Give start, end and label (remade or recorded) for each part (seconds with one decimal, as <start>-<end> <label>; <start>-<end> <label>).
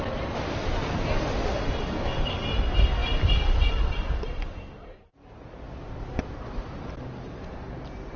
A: 0.0-1.5 recorded; 1.5-2.4 remade; 2.4-8.2 recorded